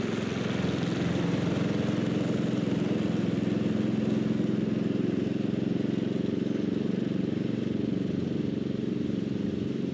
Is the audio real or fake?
real